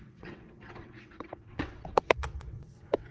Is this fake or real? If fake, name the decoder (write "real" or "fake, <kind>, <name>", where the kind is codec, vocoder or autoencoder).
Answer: fake, vocoder, WaveNeXt